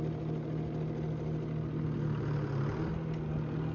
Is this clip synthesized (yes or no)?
no